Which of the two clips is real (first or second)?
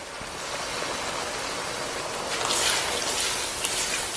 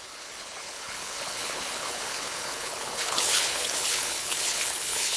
first